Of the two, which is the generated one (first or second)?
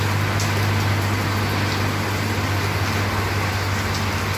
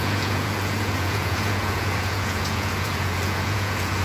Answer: second